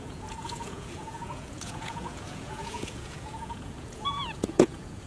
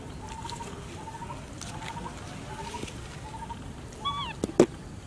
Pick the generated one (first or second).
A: first